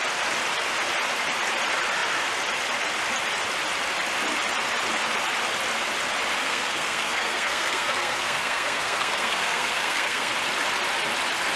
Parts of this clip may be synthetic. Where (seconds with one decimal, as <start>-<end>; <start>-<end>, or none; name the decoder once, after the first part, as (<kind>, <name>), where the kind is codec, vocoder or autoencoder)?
6.4-10.3 (codec, SNAC)